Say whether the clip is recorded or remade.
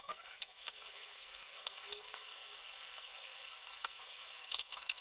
remade